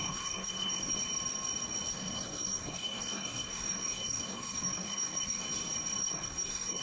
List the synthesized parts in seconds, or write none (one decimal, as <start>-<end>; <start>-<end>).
0.0-1.0; 1.9-5.4; 6.0-6.8